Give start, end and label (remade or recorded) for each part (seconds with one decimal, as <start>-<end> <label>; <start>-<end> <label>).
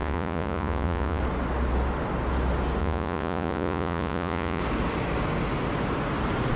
0.0-1.2 remade; 1.2-2.8 recorded; 2.8-4.6 remade; 4.6-6.6 recorded